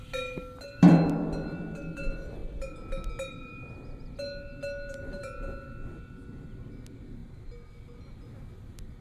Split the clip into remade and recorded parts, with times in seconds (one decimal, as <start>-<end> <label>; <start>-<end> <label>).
0.0-9.0 recorded